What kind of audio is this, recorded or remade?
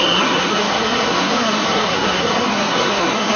remade